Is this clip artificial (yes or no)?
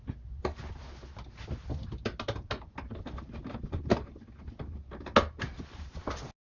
no